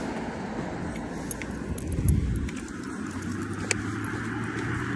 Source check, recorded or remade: recorded